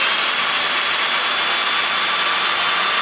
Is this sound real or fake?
real